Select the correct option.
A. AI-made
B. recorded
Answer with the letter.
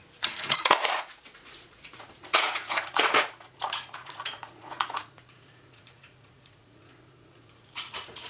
A